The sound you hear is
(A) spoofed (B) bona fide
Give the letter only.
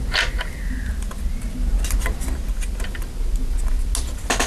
B